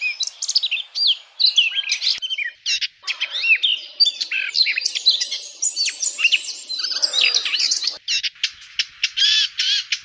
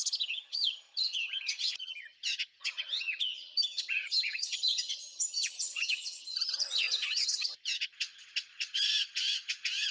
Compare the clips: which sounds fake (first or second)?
second